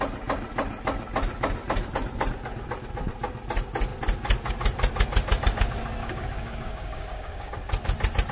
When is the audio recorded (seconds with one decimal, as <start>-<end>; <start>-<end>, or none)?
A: 0.0-6.0; 7.5-8.3